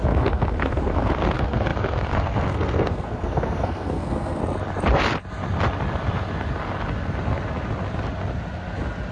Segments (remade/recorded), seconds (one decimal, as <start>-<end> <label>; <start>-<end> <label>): 0.0-4.4 remade; 4.4-9.1 recorded

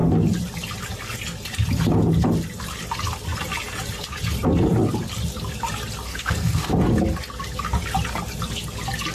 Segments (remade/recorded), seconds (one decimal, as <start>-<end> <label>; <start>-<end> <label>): 0.0-6.1 recorded; 6.1-6.7 remade; 6.7-9.1 recorded

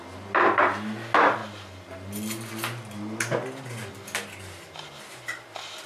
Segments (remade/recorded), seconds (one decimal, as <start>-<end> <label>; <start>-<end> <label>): 0.0-5.9 recorded

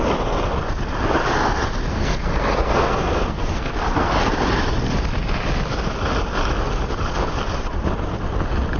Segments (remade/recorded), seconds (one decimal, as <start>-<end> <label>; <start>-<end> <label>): 0.0-1.9 recorded; 1.9-4.1 remade; 4.1-8.8 recorded

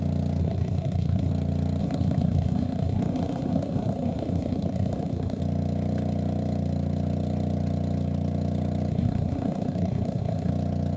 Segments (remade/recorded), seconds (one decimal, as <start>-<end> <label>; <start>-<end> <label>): 0.0-0.4 recorded; 0.4-1.3 remade; 1.3-1.8 recorded; 1.8-5.4 remade; 5.4-8.9 recorded; 8.9-10.5 remade; 10.5-11.0 recorded

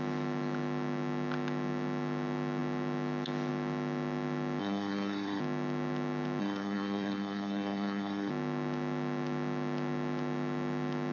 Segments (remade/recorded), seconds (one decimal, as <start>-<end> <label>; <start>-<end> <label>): 0.0-4.6 recorded; 4.6-5.4 remade; 5.4-6.4 recorded; 6.4-8.3 remade; 8.3-11.1 recorded

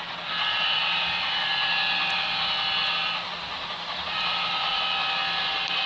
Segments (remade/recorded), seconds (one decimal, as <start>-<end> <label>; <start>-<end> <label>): 0.0-5.9 recorded